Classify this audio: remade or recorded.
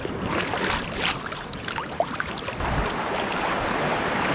recorded